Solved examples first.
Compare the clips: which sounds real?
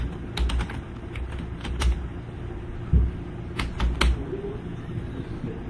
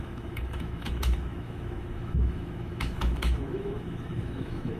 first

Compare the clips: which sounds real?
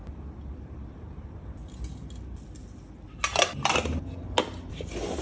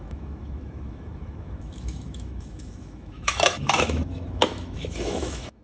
first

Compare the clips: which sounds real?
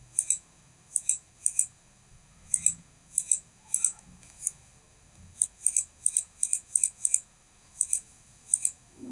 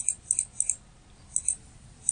second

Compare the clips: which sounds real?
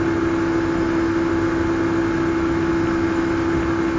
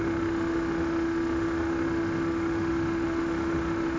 first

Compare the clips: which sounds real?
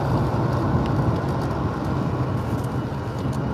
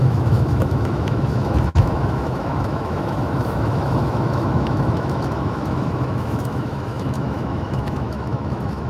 first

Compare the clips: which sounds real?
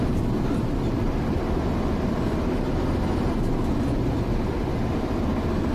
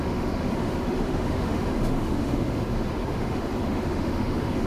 first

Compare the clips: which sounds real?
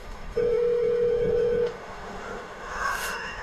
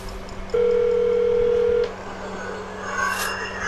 second